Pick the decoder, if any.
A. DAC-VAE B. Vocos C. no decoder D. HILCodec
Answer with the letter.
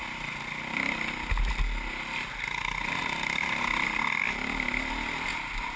C